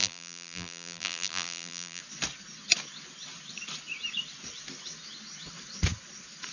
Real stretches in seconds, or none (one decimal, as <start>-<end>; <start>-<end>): 2.0-6.5